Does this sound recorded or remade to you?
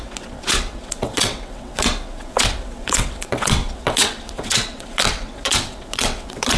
remade